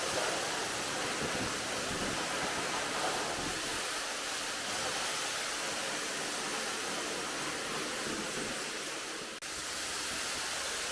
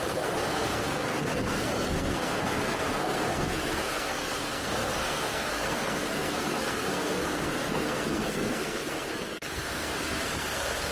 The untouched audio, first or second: first